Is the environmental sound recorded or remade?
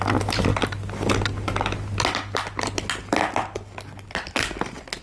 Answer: recorded